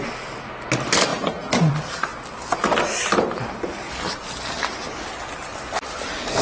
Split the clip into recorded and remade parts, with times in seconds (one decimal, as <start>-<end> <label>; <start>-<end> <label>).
0.0-6.4 recorded